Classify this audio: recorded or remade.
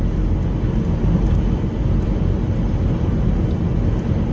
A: recorded